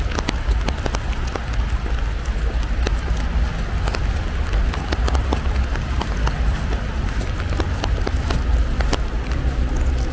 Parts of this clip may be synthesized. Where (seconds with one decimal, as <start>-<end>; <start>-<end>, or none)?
5.7-8.1